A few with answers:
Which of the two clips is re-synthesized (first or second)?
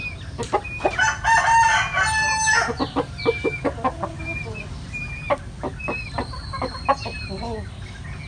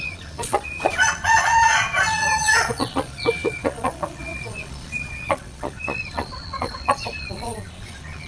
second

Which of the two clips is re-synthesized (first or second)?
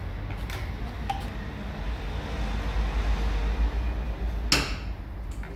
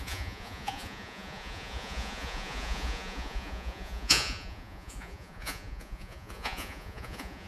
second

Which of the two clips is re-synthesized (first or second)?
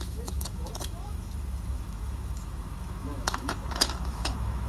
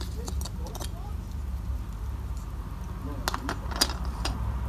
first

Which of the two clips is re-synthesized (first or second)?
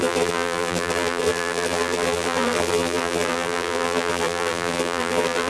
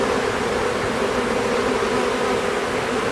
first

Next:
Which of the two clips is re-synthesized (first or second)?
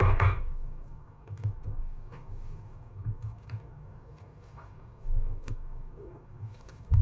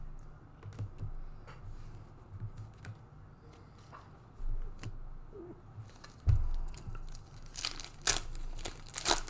first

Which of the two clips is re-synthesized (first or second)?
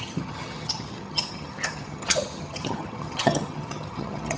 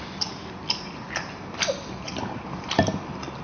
first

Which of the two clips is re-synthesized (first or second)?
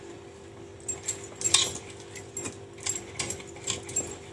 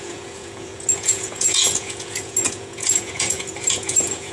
second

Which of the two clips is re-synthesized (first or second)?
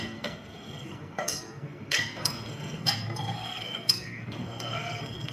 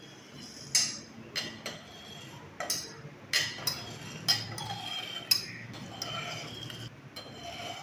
first